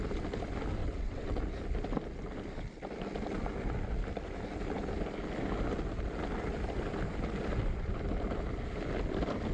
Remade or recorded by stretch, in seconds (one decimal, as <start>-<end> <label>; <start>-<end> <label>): 0.0-0.8 recorded; 0.8-1.4 remade; 1.4-9.5 recorded

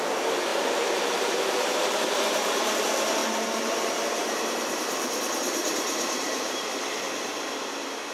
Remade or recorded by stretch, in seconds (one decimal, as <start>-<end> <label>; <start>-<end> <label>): 0.0-0.5 recorded; 0.5-2.8 remade; 2.8-3.2 recorded; 3.2-7.1 remade; 7.1-8.1 recorded

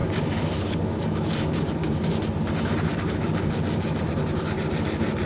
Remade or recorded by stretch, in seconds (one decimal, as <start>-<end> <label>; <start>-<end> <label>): 0.0-2.1 remade; 2.1-2.9 recorded; 2.9-4.0 remade; 4.0-5.3 recorded

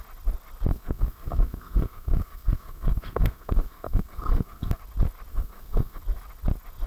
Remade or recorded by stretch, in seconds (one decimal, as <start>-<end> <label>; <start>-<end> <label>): 0.0-0.7 recorded; 0.7-4.8 remade; 4.8-5.3 recorded; 5.3-6.0 remade; 6.0-6.9 recorded

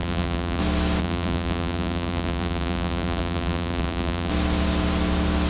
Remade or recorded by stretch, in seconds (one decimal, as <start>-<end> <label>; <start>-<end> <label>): 0.0-0.6 remade; 0.6-1.0 recorded; 1.0-4.3 remade; 4.3-5.5 recorded